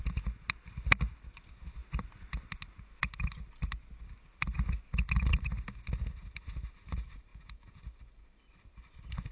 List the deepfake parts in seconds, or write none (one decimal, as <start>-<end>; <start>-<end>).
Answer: none